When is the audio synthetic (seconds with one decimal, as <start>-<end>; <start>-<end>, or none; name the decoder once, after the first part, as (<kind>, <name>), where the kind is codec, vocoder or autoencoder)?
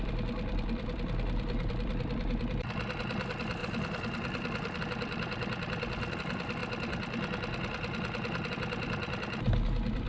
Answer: 0.0-6.6 (vocoder, BigVGAN v2); 8.5-10.1